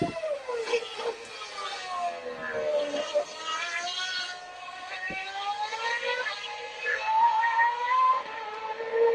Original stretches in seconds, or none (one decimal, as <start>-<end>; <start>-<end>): 0.0-6.9; 7.4-9.1

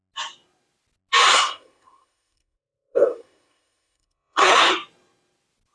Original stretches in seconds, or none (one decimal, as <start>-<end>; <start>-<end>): 0.0-1.3; 4.7-5.7

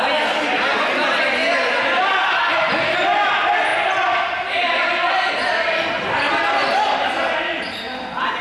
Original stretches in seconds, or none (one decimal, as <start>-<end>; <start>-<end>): 0.0-8.4

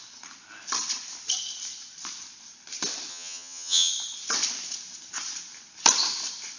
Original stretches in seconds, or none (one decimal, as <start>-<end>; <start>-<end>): 0.0-3.1; 3.9-6.6

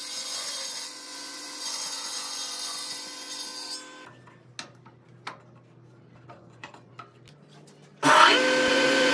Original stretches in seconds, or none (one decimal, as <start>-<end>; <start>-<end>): 3.5-6.3; 6.9-8.7